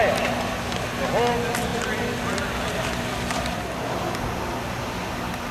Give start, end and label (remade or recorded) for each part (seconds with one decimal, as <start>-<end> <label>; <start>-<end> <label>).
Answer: 0.0-1.7 recorded; 1.7-3.6 remade; 3.6-5.5 recorded